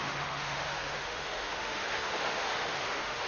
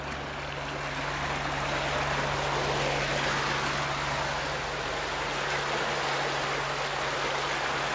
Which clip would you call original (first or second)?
second